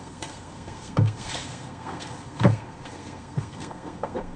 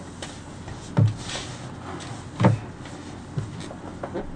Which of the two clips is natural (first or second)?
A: second